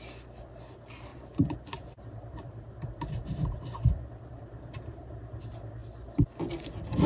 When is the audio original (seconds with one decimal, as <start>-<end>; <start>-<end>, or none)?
0.0-1.1; 5.1-7.1